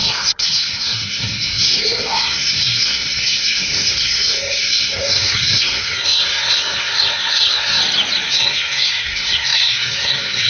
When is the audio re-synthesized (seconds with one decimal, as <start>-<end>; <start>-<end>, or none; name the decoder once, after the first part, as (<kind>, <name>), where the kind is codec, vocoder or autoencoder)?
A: 0.0-7.8 (codec, SNAC); 8.3-10.5